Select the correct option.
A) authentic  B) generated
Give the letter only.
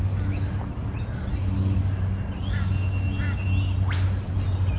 A